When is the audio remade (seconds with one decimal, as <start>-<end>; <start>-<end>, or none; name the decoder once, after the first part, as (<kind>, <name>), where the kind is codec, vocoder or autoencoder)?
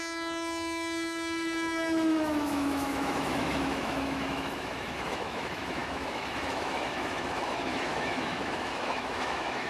0.0-9.7 (autoencoder, DAC-VAE)